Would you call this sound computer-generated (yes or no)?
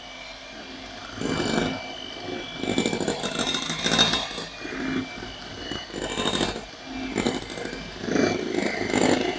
no